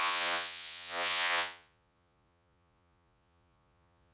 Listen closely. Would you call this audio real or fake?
fake